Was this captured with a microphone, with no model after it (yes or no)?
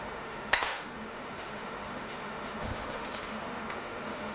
no